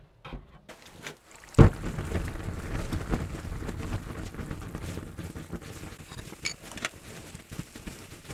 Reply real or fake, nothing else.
real